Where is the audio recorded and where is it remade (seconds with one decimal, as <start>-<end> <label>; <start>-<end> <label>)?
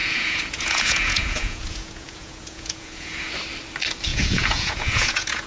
0.0-3.3 remade; 3.3-4.1 recorded; 4.1-5.5 remade